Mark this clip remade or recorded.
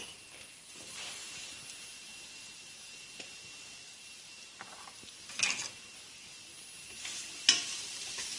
recorded